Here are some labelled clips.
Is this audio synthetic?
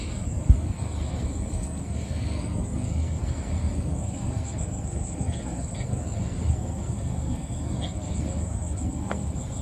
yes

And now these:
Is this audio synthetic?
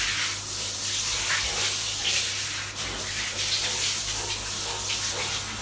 no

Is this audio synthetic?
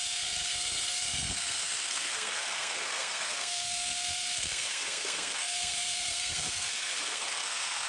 yes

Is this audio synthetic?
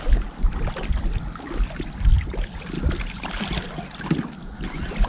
no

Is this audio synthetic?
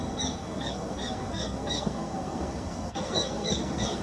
yes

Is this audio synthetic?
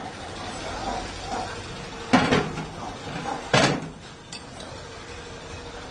no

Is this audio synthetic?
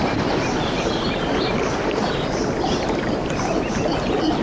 no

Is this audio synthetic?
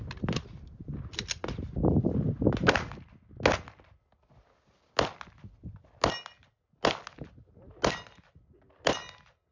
no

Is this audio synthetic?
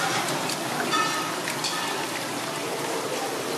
no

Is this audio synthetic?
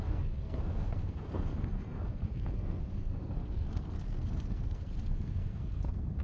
yes